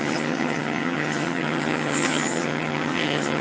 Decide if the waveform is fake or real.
fake